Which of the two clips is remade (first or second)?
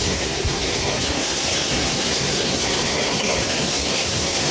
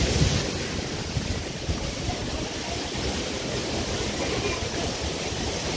first